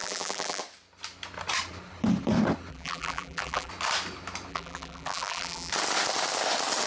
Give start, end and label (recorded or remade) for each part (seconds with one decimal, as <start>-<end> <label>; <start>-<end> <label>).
0.0-0.6 remade; 0.6-2.7 recorded; 2.7-3.7 remade; 3.7-4.5 recorded; 4.5-5.7 remade; 5.7-6.9 recorded